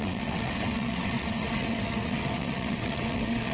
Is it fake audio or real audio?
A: fake